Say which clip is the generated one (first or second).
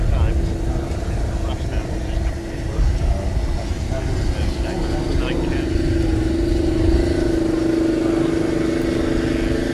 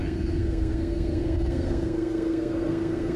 second